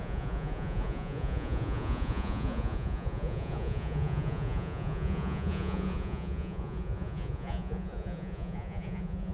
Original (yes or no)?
no